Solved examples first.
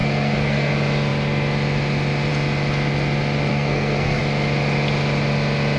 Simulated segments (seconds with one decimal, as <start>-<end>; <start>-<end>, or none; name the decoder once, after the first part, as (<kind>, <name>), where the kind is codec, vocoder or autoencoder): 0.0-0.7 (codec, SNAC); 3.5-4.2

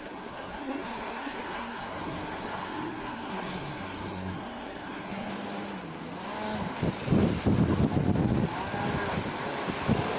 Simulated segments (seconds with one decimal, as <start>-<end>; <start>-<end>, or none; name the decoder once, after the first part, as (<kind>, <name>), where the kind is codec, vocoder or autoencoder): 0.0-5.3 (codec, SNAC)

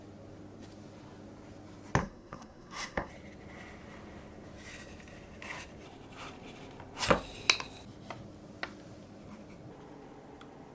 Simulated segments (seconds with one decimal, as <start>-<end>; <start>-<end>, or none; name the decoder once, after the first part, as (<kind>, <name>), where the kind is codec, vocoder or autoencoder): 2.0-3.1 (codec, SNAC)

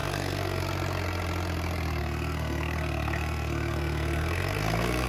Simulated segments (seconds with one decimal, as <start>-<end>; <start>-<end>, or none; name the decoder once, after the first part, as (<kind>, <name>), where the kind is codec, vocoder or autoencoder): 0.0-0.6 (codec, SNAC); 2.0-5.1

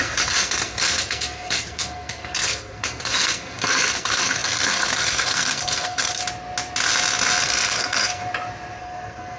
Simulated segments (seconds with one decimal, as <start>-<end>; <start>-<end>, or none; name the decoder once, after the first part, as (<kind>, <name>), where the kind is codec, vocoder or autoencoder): 0.0-6.2 (codec, SNAC); 7.4-8.2; 8.8-9.4